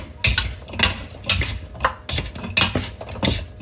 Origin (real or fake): real